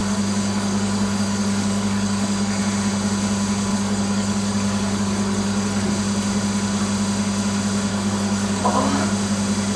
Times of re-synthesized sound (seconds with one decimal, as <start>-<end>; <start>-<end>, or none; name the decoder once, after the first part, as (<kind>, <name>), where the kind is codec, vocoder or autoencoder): 0.0-2.6 (codec, DAC); 3.7-5.9; 7.9-8.6

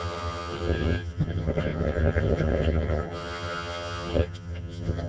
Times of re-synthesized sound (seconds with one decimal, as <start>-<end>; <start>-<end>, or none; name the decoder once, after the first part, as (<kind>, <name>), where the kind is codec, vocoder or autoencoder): 0.0-5.1 (vocoder, HiFi-GAN)